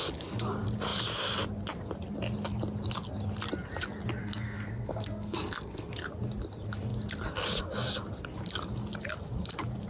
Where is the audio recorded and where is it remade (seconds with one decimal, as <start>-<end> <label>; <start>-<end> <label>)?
0.0-4.2 recorded; 4.2-5.9 remade; 5.9-9.9 recorded